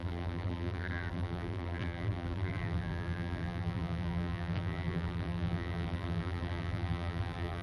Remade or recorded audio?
remade